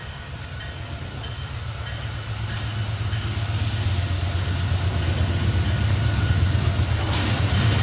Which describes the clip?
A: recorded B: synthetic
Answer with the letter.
A